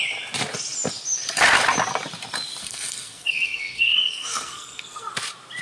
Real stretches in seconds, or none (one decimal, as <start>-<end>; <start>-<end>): 0.0-2.6; 5.1-5.6